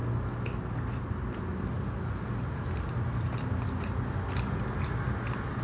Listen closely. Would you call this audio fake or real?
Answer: real